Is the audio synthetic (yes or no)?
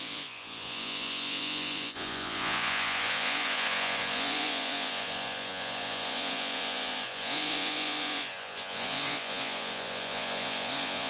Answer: yes